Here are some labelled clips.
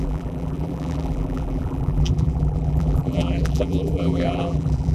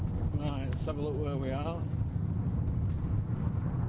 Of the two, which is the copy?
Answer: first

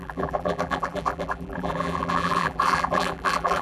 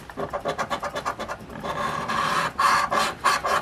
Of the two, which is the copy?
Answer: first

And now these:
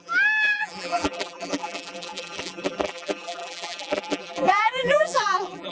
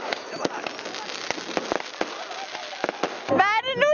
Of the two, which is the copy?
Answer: first